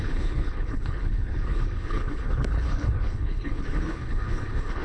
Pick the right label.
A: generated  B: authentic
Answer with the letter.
A